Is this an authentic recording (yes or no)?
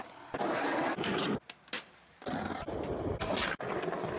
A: yes